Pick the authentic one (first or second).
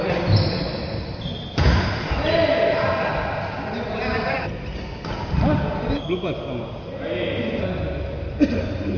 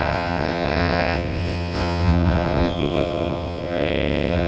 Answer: first